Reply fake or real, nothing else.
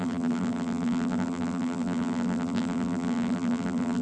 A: fake